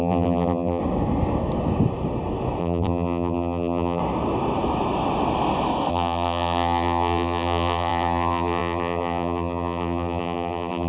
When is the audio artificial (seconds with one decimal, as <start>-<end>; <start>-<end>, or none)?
0.0-0.8; 2.6-4.0; 5.9-10.9